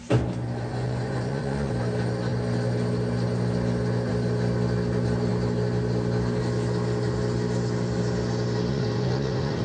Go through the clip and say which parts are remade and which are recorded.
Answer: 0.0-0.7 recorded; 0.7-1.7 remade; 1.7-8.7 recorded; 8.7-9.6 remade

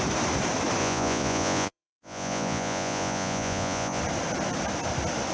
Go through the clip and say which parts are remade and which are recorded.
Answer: 0.0-0.8 recorded; 0.8-4.0 remade; 4.0-5.3 recorded